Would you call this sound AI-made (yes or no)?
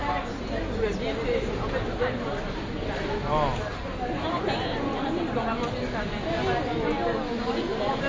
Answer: no